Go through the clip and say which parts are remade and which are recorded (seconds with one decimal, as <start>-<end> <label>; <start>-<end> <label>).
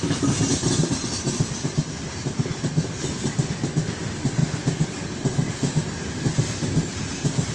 0.0-7.5 recorded